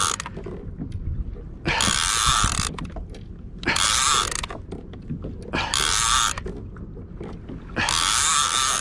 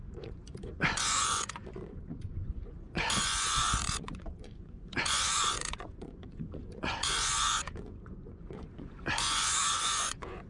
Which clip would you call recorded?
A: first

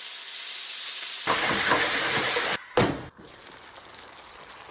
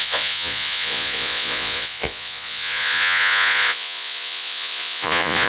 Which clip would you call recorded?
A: first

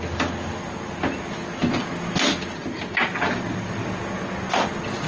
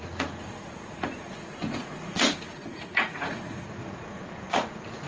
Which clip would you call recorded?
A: first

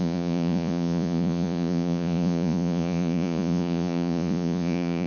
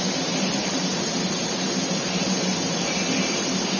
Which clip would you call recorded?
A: second